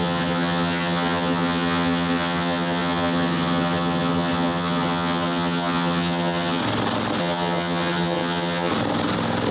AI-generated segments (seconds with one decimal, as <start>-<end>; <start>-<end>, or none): 0.0-6.6; 7.2-8.7